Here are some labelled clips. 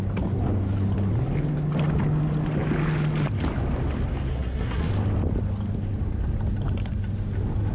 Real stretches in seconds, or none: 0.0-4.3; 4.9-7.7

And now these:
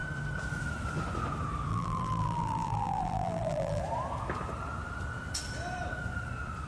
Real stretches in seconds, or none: 0.0-1.7; 3.8-6.7

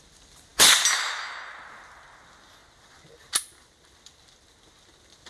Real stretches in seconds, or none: 0.0-5.3

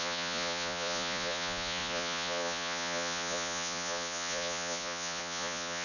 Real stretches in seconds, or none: none

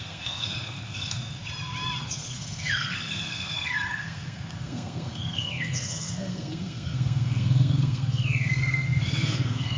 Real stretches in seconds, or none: 1.4-2.0